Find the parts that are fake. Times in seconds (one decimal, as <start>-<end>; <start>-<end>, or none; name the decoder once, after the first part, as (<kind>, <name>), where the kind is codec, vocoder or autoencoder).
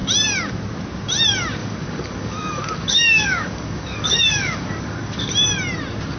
1.6-5.3 (codec, DAC)